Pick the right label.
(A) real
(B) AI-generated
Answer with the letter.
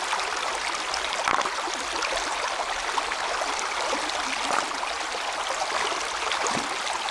A